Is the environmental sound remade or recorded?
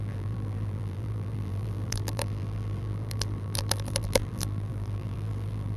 remade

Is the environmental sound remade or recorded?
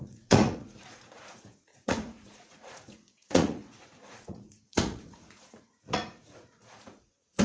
remade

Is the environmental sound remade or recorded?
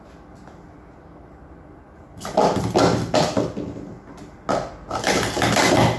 recorded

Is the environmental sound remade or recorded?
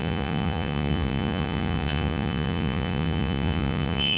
remade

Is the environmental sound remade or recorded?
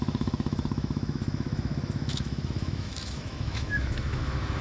remade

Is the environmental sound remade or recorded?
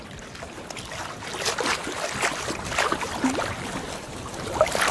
recorded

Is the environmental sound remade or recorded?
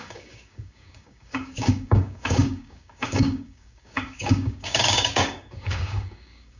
remade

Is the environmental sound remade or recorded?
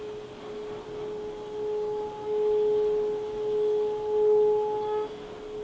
recorded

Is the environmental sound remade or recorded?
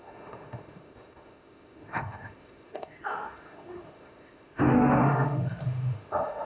remade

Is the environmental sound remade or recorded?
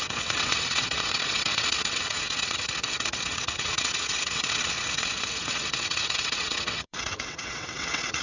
remade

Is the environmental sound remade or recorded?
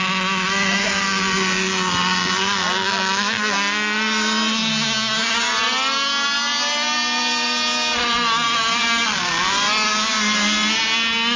recorded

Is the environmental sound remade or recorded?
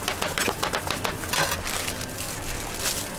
recorded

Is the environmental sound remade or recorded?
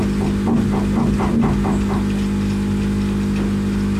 recorded